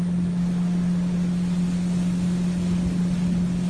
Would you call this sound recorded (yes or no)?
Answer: yes